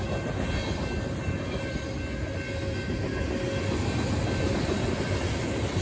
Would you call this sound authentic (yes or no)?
yes